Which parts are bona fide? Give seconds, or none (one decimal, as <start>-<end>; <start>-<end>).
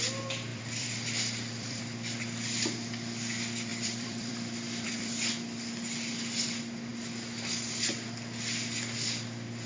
0.0-0.5; 1.8-3.7; 5.3-9.7